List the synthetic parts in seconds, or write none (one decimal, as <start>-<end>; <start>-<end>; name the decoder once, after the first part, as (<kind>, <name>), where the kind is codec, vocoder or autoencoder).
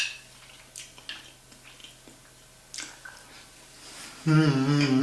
none